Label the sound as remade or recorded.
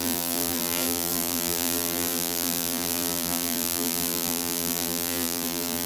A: remade